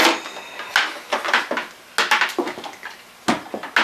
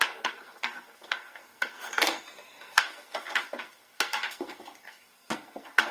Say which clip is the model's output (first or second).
second